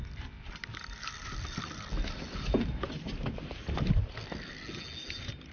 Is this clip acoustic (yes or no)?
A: yes